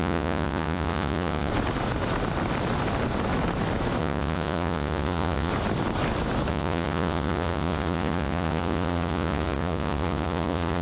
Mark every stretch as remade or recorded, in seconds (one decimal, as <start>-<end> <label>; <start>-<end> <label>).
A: 0.0-1.5 remade; 1.5-4.0 recorded; 4.0-5.5 remade; 5.5-6.5 recorded; 6.5-10.8 remade